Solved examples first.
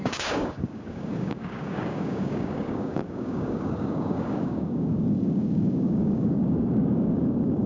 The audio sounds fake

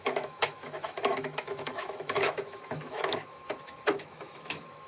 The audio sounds fake